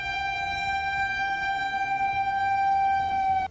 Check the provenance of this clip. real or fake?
real